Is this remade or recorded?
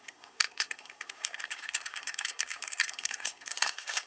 remade